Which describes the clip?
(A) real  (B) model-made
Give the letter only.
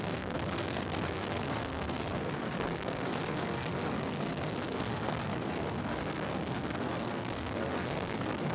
B